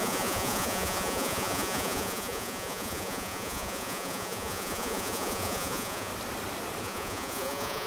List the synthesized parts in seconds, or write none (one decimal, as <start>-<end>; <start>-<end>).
0.0-6.1; 6.8-7.9